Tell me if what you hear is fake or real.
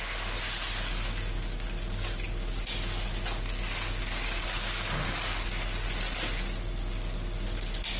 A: real